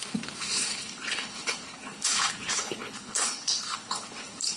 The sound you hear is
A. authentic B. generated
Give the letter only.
B